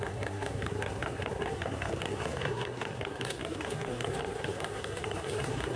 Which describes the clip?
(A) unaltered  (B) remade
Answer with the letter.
B